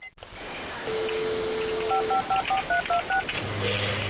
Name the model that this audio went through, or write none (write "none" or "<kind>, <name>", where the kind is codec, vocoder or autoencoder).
none